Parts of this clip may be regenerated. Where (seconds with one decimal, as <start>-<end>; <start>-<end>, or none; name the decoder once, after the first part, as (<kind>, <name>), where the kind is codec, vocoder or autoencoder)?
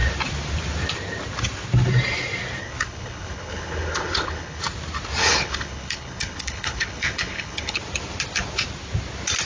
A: 2.6-4.6 (codec, HILCodec); 5.2-7.8